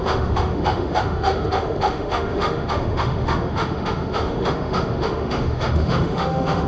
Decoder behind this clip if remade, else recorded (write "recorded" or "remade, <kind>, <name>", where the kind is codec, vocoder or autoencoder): remade, autoencoder, DAC-VAE